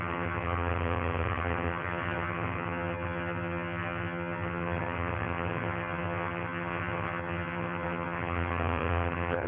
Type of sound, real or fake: fake